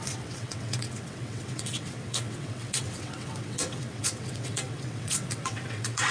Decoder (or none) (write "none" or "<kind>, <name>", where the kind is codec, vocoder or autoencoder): vocoder, WaveNeXt